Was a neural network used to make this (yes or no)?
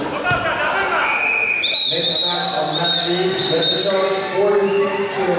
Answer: no